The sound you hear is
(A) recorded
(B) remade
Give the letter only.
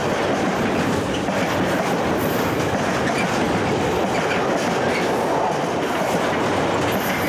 A